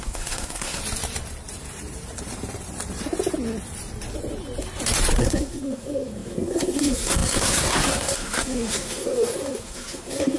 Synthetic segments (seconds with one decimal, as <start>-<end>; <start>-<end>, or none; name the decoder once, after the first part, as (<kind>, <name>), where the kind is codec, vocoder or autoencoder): 0.0-0.8 (codec, SNAC); 5.2-10.4